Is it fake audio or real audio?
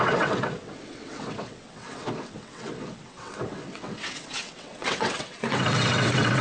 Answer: fake